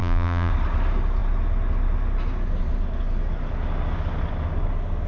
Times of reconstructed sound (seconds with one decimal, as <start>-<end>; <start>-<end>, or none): 0.0-0.5